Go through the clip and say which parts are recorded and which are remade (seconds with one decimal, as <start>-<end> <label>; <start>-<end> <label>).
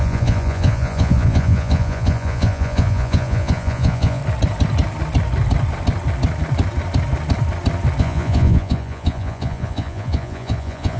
0.0-4.2 remade; 4.2-8.0 recorded; 8.0-11.0 remade